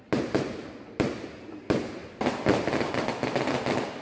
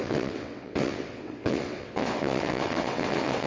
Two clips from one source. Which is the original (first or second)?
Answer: first